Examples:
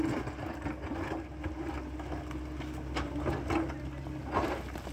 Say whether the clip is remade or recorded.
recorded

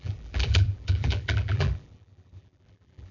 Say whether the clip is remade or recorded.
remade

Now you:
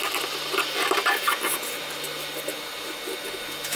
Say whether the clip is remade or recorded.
recorded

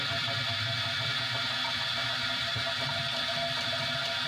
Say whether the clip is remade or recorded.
recorded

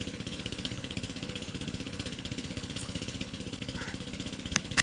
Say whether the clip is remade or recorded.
remade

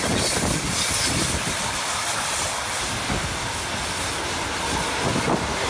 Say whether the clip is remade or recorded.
recorded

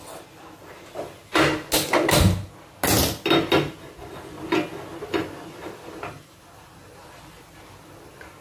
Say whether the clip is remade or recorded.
recorded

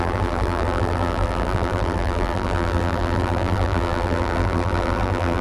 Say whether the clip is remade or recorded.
remade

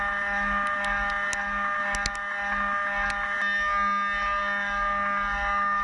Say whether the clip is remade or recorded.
recorded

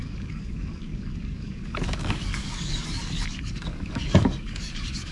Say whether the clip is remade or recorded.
remade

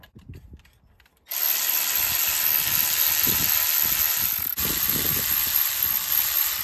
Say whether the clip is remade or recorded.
recorded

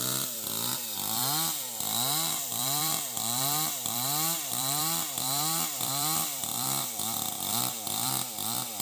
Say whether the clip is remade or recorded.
remade